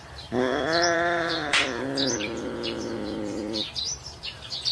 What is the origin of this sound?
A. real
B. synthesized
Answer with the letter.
B